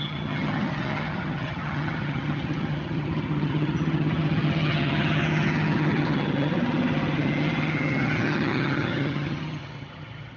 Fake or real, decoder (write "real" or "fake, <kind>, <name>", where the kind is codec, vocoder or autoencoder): fake, vocoder, HiFi-GAN